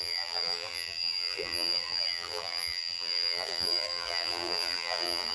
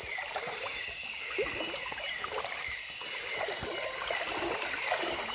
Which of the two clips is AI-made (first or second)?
first